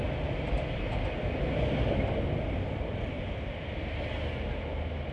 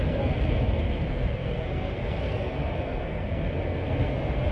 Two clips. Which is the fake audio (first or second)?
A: second